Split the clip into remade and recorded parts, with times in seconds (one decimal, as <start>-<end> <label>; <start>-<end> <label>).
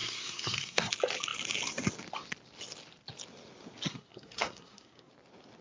0.0-0.9 remade; 0.9-3.9 recorded; 3.9-5.1 remade; 5.1-5.6 recorded